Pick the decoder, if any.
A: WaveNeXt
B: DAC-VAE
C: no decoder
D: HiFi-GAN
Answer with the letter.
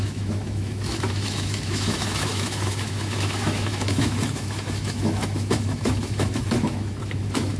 B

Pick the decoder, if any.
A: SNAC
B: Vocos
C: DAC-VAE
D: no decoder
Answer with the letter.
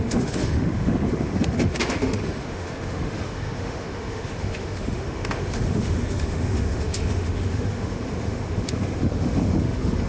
C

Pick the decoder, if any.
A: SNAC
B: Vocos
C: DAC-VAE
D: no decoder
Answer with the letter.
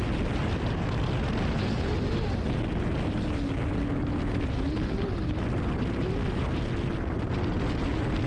D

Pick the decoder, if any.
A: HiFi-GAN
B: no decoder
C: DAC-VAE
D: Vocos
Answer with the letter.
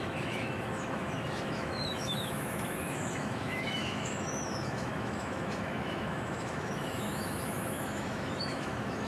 C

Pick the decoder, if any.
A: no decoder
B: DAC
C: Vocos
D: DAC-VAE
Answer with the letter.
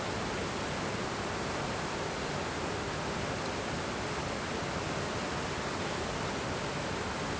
A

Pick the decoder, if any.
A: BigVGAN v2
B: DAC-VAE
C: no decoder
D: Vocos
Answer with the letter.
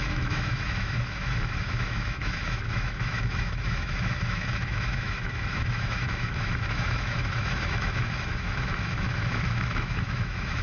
B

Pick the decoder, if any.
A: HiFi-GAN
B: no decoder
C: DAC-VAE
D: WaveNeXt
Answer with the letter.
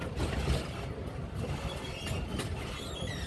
B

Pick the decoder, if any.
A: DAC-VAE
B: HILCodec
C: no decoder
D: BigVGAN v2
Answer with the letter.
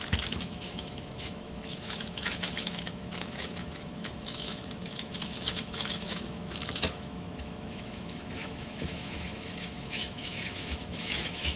A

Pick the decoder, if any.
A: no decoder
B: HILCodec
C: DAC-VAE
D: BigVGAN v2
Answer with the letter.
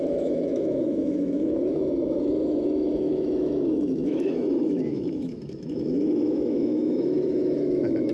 C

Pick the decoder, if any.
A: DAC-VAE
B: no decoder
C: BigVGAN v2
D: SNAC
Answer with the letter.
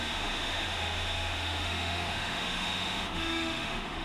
A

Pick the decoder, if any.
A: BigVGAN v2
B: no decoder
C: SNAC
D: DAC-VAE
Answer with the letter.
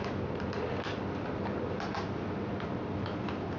B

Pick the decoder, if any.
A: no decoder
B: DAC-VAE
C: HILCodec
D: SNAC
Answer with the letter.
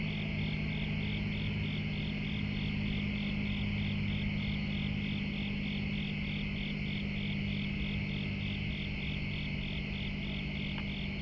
A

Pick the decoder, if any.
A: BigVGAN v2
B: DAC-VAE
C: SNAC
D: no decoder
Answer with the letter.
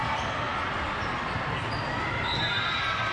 D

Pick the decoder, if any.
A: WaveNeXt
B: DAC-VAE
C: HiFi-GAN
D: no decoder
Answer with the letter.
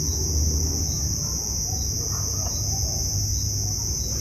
D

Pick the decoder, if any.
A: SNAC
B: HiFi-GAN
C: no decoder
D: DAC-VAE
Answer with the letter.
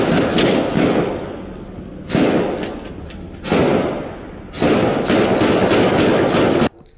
C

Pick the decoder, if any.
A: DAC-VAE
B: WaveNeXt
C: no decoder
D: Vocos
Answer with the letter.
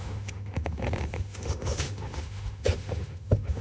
A